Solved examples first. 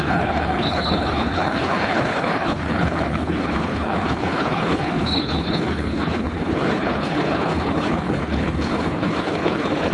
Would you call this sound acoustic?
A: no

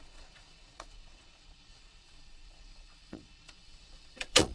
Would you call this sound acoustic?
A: no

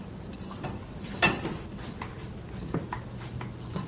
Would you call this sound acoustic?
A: yes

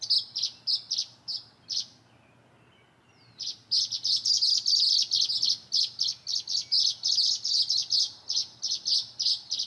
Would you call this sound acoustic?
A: yes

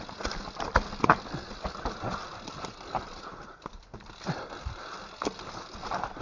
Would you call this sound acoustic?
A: yes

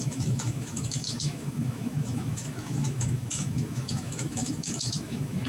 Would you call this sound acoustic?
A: no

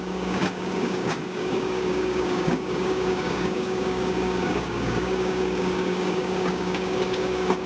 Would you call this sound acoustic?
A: no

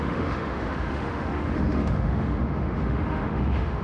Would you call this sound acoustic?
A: no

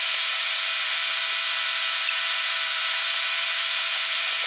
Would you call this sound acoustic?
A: no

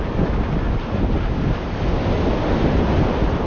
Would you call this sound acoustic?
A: yes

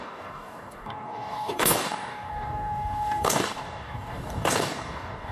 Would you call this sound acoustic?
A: no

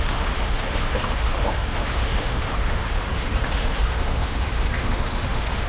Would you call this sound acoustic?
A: no